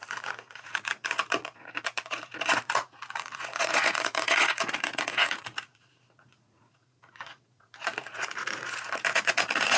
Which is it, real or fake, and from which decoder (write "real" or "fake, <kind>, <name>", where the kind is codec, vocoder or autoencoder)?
fake, vocoder, Vocos